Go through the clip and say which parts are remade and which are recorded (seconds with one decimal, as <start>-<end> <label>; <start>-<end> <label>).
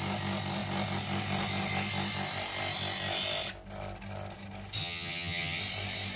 0.0-4.8 recorded; 4.8-5.6 remade; 5.6-6.2 recorded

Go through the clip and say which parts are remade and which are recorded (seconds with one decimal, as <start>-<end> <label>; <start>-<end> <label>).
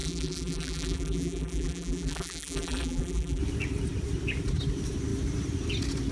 0.0-3.4 remade; 3.4-6.1 recorded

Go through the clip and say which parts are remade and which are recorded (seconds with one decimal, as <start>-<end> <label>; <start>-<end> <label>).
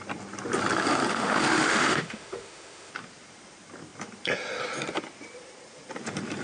0.0-1.1 recorded; 1.1-2.9 remade; 2.9-6.4 recorded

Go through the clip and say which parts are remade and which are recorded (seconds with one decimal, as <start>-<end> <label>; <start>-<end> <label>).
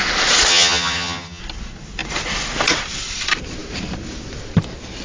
0.0-0.5 recorded; 0.5-1.4 remade; 1.4-5.0 recorded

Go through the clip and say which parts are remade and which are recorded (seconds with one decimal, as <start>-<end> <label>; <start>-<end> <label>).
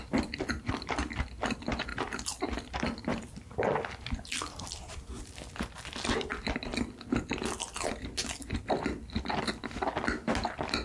0.0-1.9 recorded; 1.9-5.7 remade; 5.7-6.7 recorded; 6.7-7.3 remade; 7.3-10.8 recorded